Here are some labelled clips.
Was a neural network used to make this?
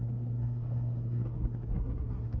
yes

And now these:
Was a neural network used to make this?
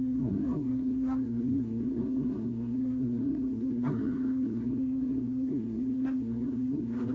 yes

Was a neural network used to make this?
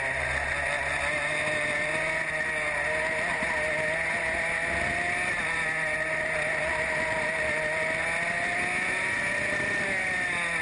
no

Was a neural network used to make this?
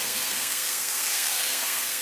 yes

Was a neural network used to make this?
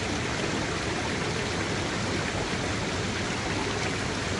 no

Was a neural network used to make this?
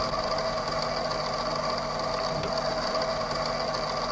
no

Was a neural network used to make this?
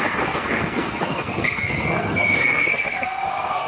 yes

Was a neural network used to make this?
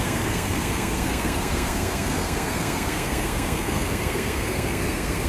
yes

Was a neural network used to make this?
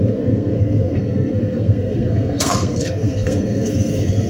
yes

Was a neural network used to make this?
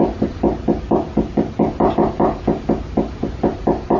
no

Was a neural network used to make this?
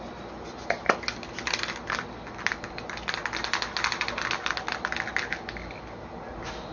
no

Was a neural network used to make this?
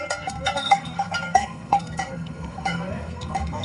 yes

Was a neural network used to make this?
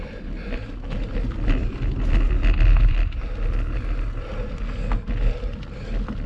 no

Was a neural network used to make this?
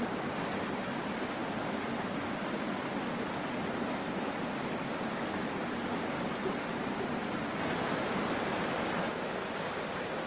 no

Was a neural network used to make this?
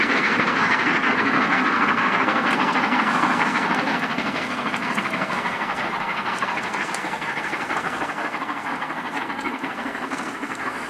yes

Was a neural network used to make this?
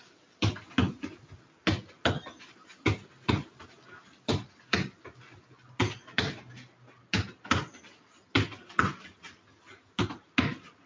no